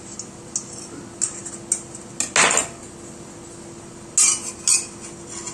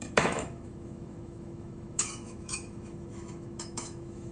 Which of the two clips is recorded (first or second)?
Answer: first